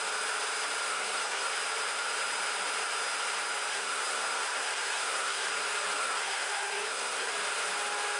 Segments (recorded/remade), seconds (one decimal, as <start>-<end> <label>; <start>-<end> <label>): 0.0-0.9 recorded; 0.9-1.5 remade; 1.5-3.7 recorded; 3.7-5.5 remade; 5.5-6.0 recorded; 6.0-7.3 remade; 7.3-8.2 recorded